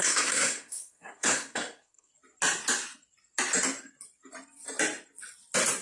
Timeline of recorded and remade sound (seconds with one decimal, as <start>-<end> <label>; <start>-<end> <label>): 0.0-2.1 remade; 2.1-5.8 recorded